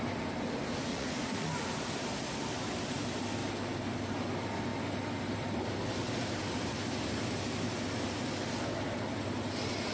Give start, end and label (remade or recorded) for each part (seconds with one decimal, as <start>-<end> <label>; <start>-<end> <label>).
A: 0.0-0.9 recorded; 0.9-1.5 remade; 1.5-9.9 recorded